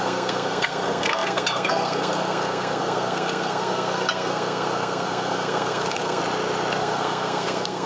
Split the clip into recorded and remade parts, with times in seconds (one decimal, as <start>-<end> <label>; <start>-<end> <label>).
0.0-6.2 remade; 6.2-6.8 recorded; 6.8-7.9 remade